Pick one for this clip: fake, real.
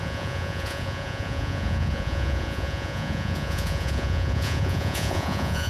fake